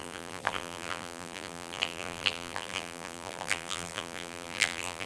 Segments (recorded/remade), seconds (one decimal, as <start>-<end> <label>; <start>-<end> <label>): 0.0-5.0 remade